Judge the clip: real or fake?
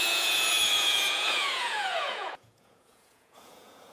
fake